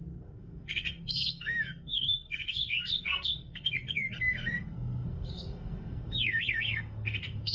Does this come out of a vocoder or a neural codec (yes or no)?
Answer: yes